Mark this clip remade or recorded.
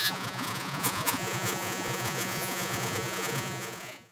remade